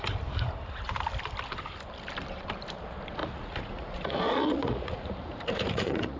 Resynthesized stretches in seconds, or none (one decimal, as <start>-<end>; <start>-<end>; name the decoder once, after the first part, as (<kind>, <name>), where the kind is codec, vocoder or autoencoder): 3.2-6.2 (vocoder, Vocos)